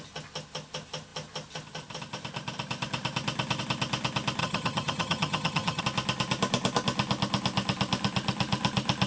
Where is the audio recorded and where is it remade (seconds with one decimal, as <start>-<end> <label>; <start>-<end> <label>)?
0.0-4.4 recorded; 4.4-5.8 remade; 5.8-9.1 recorded